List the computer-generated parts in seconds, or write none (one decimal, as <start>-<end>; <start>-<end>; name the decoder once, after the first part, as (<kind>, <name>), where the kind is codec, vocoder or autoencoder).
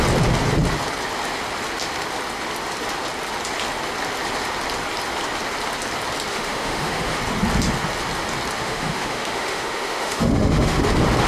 6.3-7.2 (autoencoder, DAC-VAE); 8.6-10.8